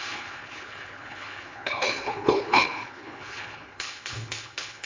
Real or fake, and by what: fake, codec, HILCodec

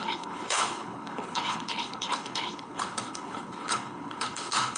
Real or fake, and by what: fake, codec, HILCodec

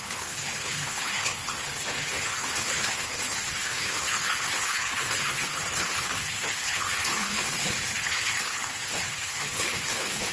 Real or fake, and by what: fake, codec, HILCodec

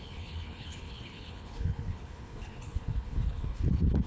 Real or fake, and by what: fake, codec, HILCodec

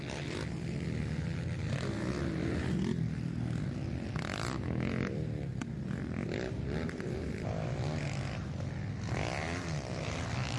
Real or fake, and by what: real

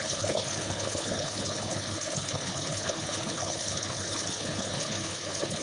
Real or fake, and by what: fake, codec, HILCodec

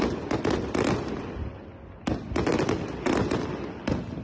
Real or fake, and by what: real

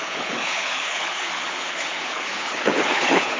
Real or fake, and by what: fake, codec, HILCodec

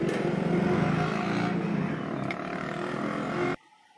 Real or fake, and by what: real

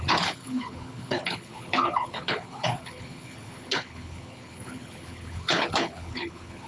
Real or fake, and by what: fake, codec, HILCodec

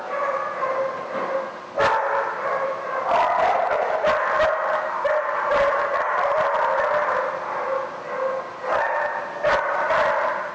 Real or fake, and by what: real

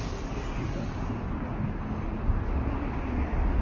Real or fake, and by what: real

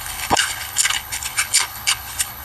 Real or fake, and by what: fake, codec, HILCodec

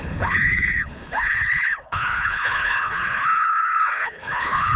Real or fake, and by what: fake, codec, HILCodec